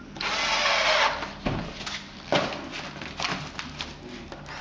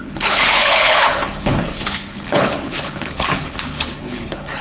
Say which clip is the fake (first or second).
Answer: second